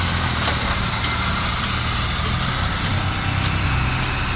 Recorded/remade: recorded